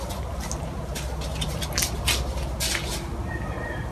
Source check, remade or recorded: recorded